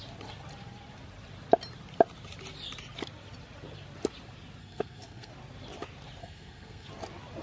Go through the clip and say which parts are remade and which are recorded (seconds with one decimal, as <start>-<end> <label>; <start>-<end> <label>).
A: 0.0-4.6 recorded; 4.6-5.3 remade; 5.3-6.2 recorded; 6.2-6.9 remade; 6.9-7.4 recorded